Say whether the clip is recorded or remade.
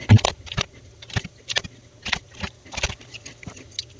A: recorded